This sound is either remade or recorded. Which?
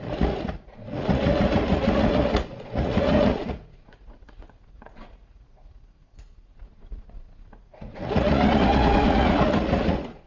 remade